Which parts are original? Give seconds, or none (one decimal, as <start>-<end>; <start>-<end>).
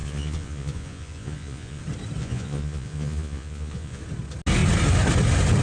1.8-2.2; 4.0-5.6